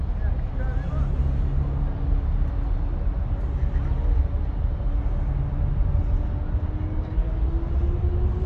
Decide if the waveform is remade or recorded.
recorded